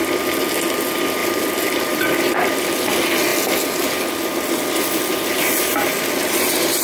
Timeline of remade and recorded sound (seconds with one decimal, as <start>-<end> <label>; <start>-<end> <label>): 0.0-1.2 recorded; 1.2-2.0 remade; 2.0-6.8 recorded